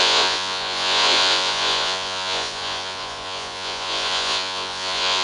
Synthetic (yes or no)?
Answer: yes